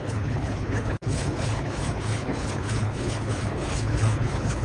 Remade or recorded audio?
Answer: remade